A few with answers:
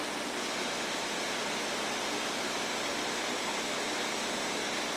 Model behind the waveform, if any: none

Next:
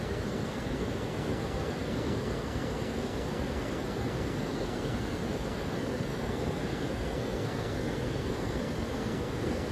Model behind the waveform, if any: codec, SNAC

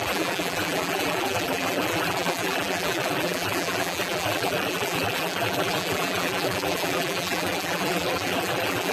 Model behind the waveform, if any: vocoder, BigVGAN v2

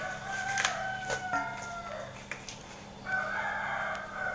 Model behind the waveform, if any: none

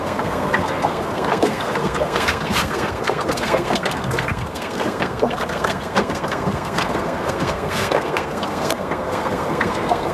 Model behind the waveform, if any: codec, SNAC